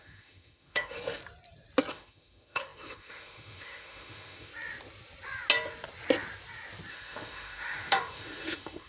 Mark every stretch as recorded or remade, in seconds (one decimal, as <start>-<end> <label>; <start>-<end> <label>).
0.0-1.2 remade; 1.2-1.9 recorded; 1.9-4.5 remade; 4.5-6.9 recorded; 6.9-8.9 remade